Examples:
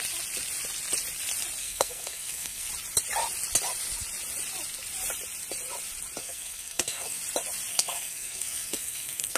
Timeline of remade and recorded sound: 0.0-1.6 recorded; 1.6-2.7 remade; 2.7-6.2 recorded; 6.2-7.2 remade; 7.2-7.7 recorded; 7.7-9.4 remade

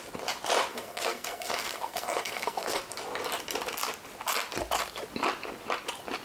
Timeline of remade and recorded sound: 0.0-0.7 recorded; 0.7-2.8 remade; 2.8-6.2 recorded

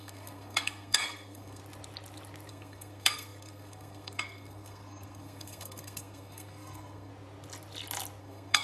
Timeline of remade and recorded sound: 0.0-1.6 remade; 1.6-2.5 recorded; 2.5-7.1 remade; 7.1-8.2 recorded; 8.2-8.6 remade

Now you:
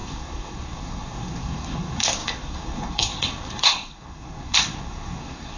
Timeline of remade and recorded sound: 0.0-5.6 remade